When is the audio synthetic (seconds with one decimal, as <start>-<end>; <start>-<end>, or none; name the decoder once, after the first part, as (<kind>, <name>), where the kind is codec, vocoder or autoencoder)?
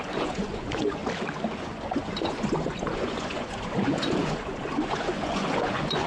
0.0-1.0 (vocoder, Vocos); 1.6-6.1